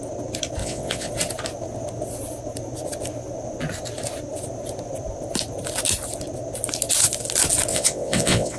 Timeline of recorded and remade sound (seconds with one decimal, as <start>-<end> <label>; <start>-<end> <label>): 0.0-0.6 recorded; 0.6-1.1 remade; 1.1-7.7 recorded; 7.7-8.6 remade